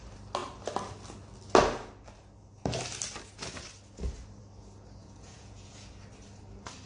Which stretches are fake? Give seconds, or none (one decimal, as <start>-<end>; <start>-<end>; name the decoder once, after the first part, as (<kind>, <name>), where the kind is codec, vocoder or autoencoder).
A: 5.0-5.9 (vocoder, Vocos)